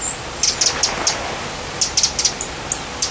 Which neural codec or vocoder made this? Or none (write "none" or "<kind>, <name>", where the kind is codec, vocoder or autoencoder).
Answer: none